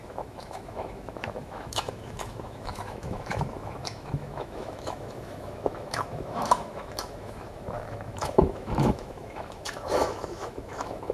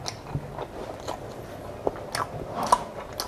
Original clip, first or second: second